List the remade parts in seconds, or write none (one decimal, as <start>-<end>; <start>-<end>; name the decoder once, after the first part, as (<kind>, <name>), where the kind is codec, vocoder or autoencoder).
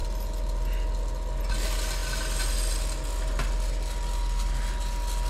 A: none